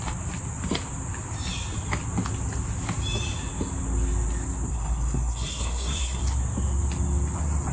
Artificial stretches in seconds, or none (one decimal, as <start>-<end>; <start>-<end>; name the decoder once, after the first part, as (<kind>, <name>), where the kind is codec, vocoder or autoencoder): 4.7-6.2 (codec, SNAC)